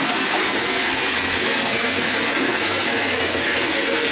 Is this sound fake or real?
fake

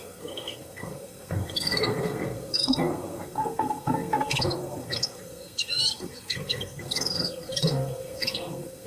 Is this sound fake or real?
fake